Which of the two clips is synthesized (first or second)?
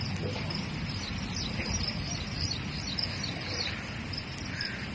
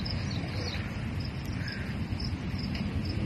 first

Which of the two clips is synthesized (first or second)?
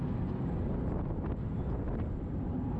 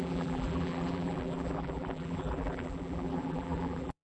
second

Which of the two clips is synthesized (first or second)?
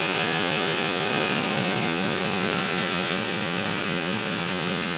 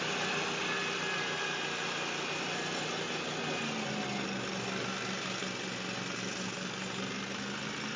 first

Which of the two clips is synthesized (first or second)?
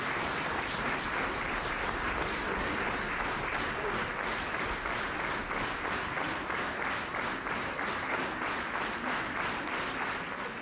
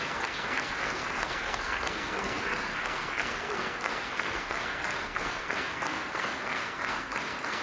second